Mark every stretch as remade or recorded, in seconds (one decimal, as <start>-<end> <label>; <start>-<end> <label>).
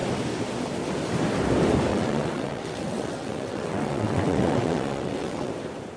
0.0-1.9 recorded; 1.9-5.5 remade; 5.5-6.0 recorded